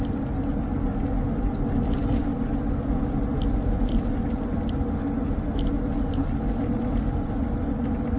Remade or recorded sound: recorded